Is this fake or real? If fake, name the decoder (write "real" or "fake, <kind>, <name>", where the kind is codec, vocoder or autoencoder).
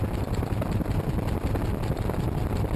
fake, vocoder, BigVGAN v2